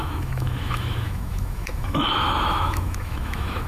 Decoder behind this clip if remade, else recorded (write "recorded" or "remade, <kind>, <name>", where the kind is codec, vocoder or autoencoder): remade, autoencoder, DAC-VAE